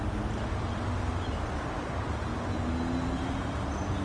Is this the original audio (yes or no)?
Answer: yes